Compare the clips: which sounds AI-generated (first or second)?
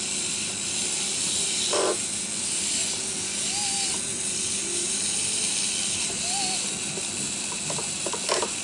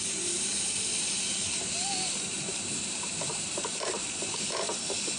second